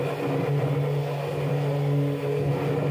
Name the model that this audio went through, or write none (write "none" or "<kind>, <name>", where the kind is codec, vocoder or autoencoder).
none